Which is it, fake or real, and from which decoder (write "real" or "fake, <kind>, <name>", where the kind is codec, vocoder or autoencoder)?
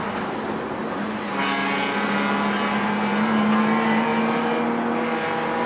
real